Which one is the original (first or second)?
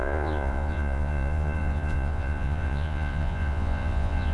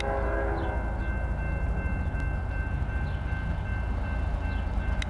second